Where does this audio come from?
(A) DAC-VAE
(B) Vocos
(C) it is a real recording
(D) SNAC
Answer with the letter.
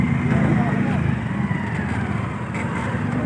C